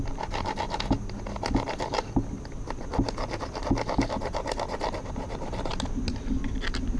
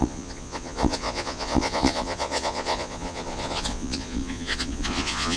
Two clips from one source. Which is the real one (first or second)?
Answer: first